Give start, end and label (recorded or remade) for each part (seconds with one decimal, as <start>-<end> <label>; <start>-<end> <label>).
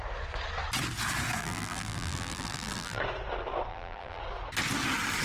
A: 0.0-1.4 recorded; 1.4-3.0 remade; 3.0-3.7 recorded; 3.7-4.2 remade; 4.2-5.2 recorded